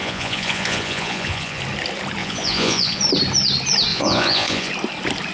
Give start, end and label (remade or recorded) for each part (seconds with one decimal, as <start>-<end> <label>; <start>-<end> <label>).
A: 0.0-1.6 remade; 1.6-2.2 recorded; 2.2-3.0 remade; 3.0-3.9 recorded; 3.9-4.7 remade; 4.7-5.3 recorded